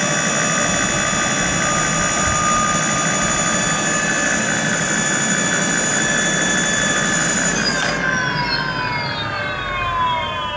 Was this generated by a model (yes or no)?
no